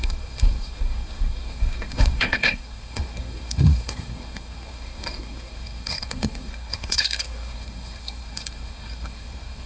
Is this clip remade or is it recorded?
remade